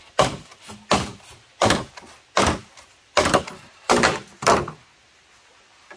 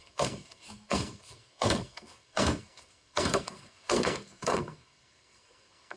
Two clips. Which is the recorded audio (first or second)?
first